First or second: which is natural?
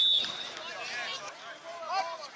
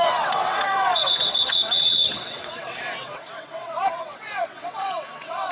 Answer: first